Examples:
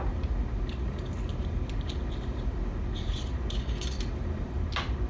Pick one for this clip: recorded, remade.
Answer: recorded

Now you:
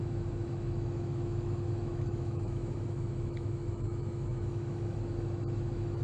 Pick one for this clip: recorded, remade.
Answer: remade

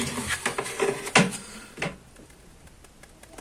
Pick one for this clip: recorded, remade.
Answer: recorded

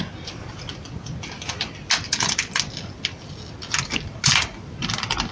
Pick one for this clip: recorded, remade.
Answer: recorded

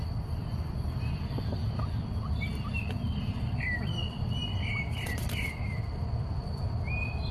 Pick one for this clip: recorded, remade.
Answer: recorded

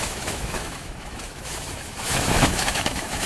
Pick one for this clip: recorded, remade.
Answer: remade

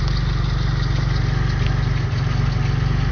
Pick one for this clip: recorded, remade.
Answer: recorded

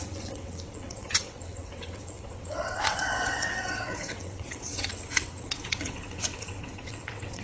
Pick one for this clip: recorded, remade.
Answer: remade